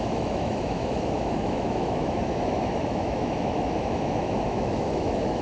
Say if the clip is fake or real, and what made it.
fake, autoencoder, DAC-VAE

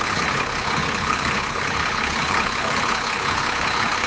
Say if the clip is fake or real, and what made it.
fake, codec, HILCodec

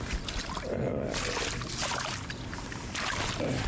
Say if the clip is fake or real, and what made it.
real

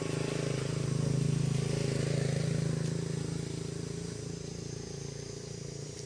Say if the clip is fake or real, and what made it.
real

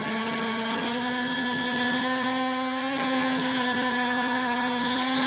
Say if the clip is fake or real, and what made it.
fake, vocoder, HiFi-GAN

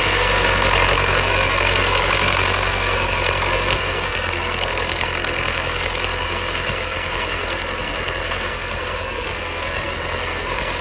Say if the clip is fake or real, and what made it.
fake, codec, SNAC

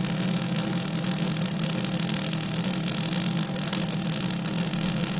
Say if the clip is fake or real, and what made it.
real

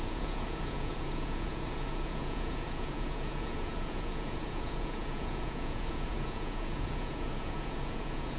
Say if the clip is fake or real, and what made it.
fake, vocoder, Vocos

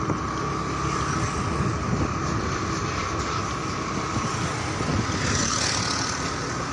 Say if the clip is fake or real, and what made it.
real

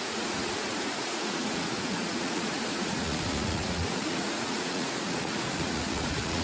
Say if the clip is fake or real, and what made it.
fake, vocoder, Vocos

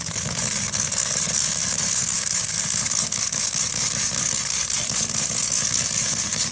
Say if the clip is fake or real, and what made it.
fake, codec, DAC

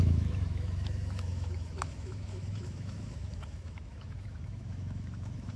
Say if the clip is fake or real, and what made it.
fake, autoencoder, DAC-VAE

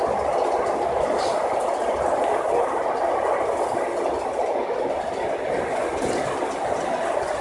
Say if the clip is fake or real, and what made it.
real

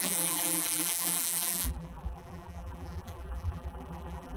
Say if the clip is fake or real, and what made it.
fake, vocoder, BigVGAN v2